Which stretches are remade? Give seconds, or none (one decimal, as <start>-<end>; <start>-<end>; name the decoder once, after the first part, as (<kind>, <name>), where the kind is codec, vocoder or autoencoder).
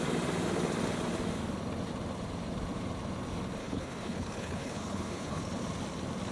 3.6-5.4 (codec, HILCodec)